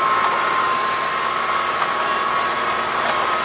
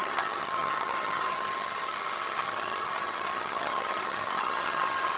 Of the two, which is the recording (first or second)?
first